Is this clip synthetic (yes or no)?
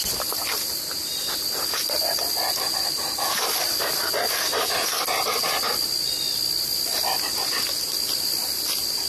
no